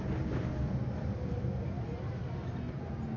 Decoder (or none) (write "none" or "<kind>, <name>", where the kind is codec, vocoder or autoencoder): none